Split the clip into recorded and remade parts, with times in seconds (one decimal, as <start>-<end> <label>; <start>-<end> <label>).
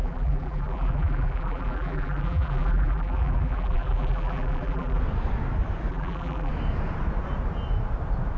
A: 0.0-5.0 remade; 5.0-5.9 recorded; 5.9-6.5 remade; 6.5-8.4 recorded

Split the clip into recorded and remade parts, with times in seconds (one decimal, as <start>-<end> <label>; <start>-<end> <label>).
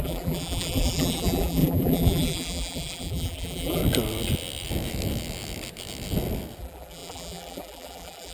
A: 0.0-3.8 remade; 3.8-6.6 recorded; 6.6-8.3 remade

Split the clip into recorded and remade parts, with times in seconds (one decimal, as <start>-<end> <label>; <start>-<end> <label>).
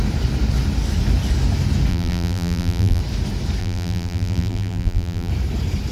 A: 0.0-1.9 recorded; 1.9-3.0 remade; 3.0-3.6 recorded; 3.6-5.3 remade; 5.3-5.9 recorded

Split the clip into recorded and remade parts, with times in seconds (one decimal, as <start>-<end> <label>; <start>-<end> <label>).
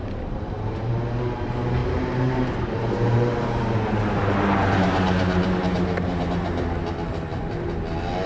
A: 0.0-0.9 remade; 0.9-1.8 recorded; 1.8-6.8 remade; 6.8-8.3 recorded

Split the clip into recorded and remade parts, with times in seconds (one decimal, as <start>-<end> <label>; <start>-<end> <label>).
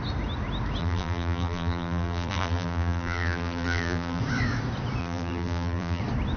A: 0.0-0.8 recorded; 0.8-4.2 remade; 4.2-5.0 recorded; 5.0-6.0 remade; 6.0-6.4 recorded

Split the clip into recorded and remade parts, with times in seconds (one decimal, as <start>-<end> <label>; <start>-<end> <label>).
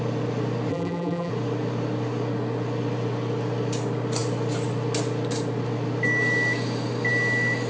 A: 0.0-0.7 recorded; 0.7-1.3 remade; 1.3-7.7 recorded